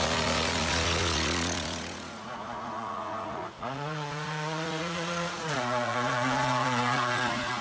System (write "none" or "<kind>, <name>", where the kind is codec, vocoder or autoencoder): vocoder, Vocos